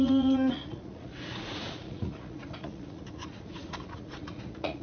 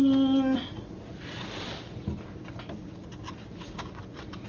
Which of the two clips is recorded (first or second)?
second